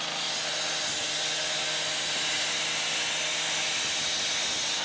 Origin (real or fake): real